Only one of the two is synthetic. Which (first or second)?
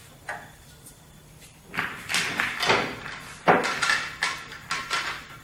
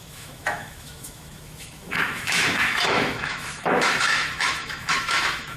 second